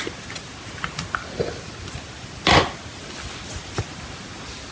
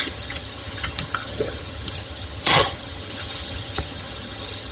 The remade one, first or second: second